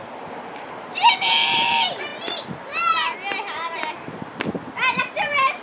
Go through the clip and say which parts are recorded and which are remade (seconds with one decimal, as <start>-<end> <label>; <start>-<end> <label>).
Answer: 0.0-2.1 remade; 2.1-5.0 recorded; 5.0-5.6 remade